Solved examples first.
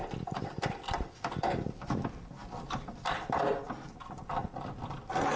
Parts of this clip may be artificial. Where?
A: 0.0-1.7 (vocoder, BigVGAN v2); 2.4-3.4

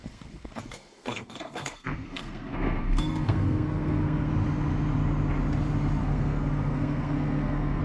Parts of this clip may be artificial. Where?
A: 0.0-4.3 (codec, SNAC); 6.0-7.8

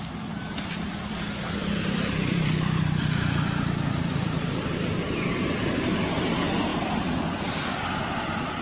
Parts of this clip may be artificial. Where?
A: 0.0-8.6 (vocoder, BigVGAN v2)